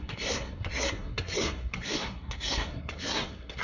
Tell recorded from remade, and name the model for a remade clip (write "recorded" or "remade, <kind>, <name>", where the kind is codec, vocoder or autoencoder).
remade, codec, SNAC